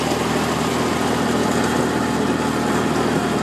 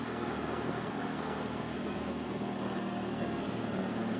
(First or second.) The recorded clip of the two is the first